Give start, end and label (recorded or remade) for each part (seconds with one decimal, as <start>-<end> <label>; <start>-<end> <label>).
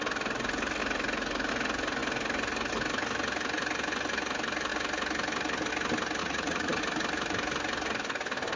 0.0-6.2 recorded; 6.2-6.8 remade; 6.8-8.6 recorded